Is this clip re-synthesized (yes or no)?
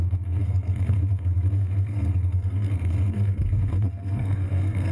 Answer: yes